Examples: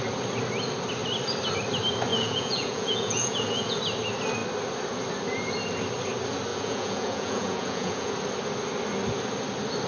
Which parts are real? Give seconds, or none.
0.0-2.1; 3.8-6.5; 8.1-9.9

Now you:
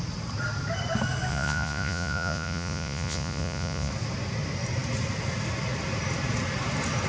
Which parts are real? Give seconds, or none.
0.0-1.3; 3.9-7.1

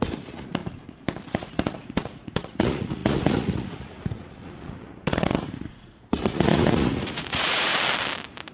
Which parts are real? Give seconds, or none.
0.6-1.3; 7.7-8.5

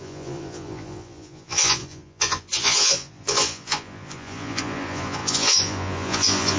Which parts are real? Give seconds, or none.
none

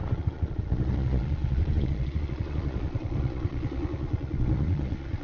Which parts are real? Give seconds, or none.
none

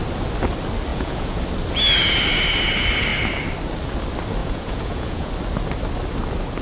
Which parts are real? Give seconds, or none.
0.0-0.9; 1.4-4.4; 5.3-6.6